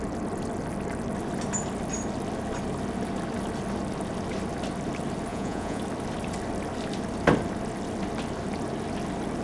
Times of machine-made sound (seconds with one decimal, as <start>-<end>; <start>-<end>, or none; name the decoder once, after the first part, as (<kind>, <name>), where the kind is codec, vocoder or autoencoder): 5.3-5.8 (vocoder, Vocos)